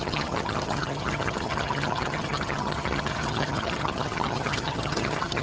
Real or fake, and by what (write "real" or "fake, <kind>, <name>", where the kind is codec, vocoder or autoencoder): fake, vocoder, HiFi-GAN